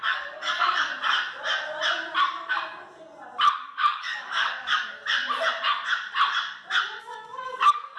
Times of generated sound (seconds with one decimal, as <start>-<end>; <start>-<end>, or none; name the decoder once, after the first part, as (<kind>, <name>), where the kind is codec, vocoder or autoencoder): 0.0-0.9 (codec, DAC); 3.5-5.0; 7.0-8.0